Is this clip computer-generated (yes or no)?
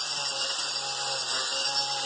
no